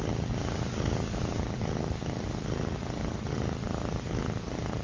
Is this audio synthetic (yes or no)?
no